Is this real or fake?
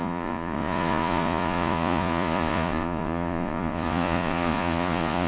fake